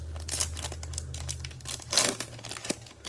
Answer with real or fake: real